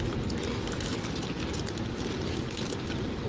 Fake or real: real